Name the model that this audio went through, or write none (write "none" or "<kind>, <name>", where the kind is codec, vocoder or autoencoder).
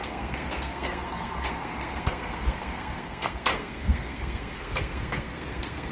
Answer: codec, SNAC